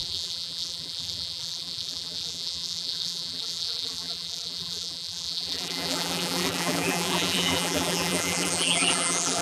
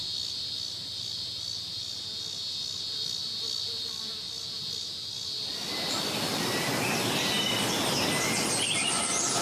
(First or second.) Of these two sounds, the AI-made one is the first